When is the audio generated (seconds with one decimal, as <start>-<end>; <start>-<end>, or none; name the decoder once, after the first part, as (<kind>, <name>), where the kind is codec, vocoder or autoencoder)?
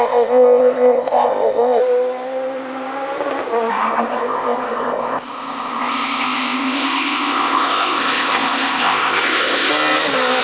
0.0-1.8 (codec, ZipCodec); 3.7-9.7